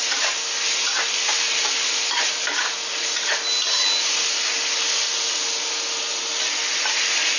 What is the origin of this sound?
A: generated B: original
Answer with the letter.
B